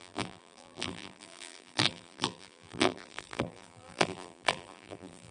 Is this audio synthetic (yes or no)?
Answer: yes